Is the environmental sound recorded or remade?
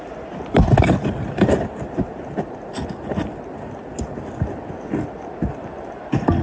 recorded